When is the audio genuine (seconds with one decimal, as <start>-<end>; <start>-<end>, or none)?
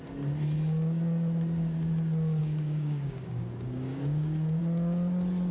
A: 0.0-2.4; 4.6-5.5